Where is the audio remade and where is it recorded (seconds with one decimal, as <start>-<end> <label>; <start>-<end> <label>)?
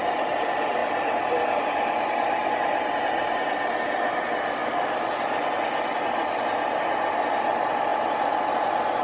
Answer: 0.0-4.6 recorded; 4.6-5.2 remade; 5.2-7.9 recorded; 7.9-8.5 remade; 8.5-9.0 recorded